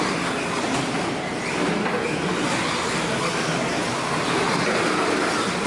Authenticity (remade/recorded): recorded